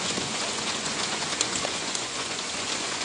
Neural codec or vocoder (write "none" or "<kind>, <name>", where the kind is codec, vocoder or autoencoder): vocoder, Vocos